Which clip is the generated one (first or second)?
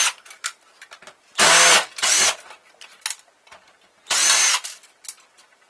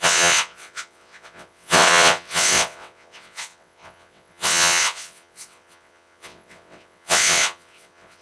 second